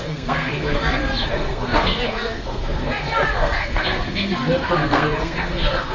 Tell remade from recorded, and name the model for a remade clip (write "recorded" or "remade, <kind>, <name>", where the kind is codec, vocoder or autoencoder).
remade, codec, SNAC